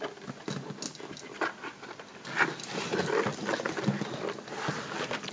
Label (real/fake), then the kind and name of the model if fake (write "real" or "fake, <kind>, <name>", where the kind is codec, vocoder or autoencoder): real